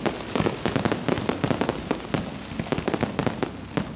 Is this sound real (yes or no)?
yes